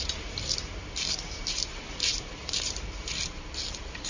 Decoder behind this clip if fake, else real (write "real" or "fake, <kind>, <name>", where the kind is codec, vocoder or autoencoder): fake, vocoder, BigVGAN v2